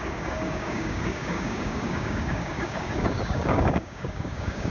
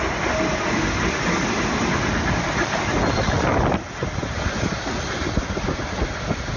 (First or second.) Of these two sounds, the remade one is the first